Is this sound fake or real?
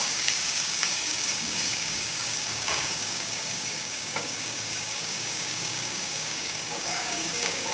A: fake